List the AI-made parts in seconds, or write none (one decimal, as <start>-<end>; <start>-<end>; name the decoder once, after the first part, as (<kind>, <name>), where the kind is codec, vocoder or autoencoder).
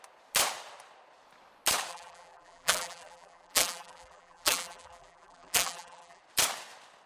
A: 1.9-6.2 (vocoder, BigVGAN v2)